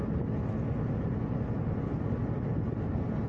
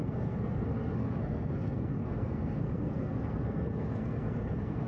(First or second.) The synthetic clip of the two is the second